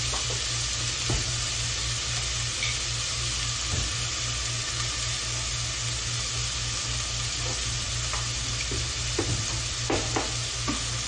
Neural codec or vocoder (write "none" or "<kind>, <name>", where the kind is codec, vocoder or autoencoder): none